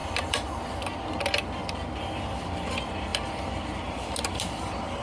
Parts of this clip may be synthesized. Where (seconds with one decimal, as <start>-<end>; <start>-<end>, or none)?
0.0-0.6